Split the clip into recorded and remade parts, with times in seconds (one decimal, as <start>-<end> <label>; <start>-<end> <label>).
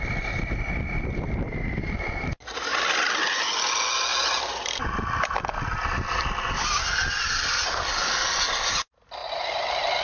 0.0-10.0 recorded